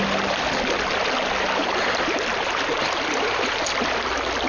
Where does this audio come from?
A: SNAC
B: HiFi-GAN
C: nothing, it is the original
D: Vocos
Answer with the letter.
C